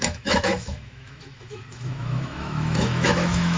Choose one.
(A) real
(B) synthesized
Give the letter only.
B